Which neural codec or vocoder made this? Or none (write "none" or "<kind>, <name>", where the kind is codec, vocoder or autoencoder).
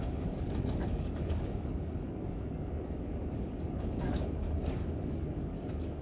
codec, DAC